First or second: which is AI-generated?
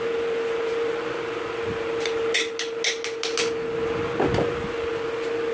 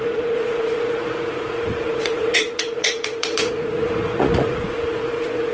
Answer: second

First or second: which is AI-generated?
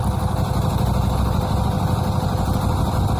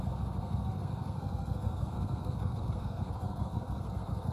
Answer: second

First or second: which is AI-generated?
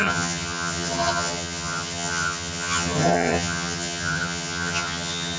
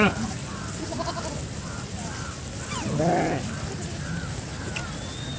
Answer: first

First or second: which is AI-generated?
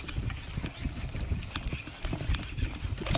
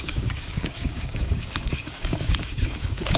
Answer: second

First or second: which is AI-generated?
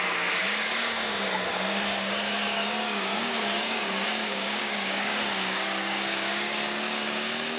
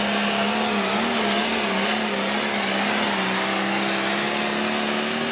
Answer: first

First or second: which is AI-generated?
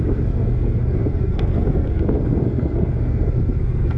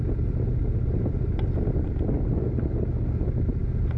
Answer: first